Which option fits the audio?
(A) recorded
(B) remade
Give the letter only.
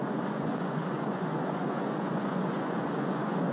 B